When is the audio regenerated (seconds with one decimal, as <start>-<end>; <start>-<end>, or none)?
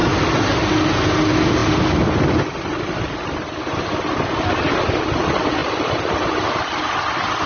5.6-6.3